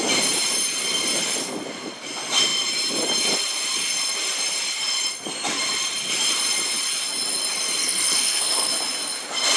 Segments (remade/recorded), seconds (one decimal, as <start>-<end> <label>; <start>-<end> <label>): 0.0-7.8 recorded; 7.8-8.7 remade; 8.7-9.6 recorded